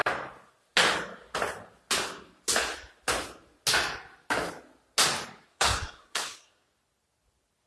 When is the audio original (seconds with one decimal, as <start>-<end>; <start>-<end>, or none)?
0.0-5.5; 6.7-7.7